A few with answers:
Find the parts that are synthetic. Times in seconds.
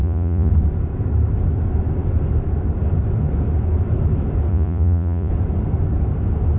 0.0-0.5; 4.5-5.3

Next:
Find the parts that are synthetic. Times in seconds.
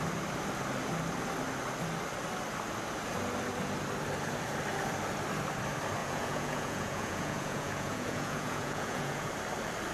6.0-9.3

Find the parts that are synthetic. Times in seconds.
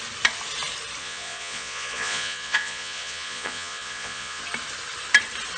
1.0-4.4